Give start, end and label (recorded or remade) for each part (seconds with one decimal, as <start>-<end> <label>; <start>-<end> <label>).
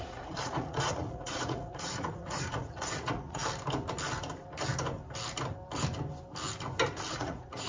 0.0-3.4 remade; 3.4-7.1 recorded; 7.1-7.7 remade